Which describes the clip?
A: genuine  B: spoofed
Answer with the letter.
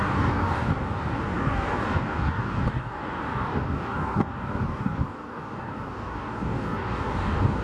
B